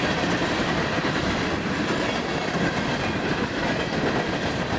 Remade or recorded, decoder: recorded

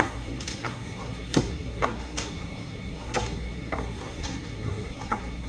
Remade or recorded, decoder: remade, codec, SNAC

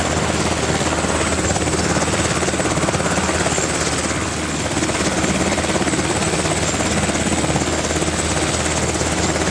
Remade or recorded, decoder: recorded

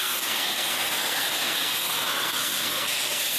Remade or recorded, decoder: remade, codec, SNAC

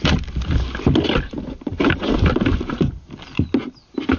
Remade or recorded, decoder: recorded